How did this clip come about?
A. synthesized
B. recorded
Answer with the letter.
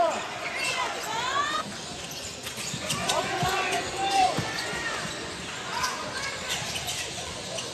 A